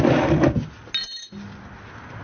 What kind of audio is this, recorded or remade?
recorded